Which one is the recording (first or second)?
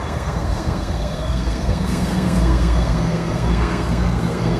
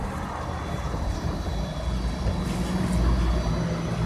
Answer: second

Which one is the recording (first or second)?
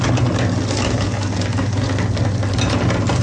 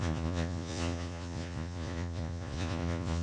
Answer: first